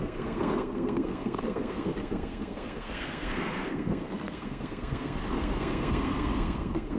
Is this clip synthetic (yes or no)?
yes